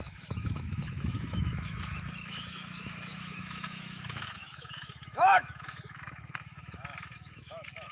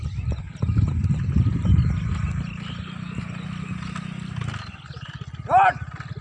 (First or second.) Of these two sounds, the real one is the second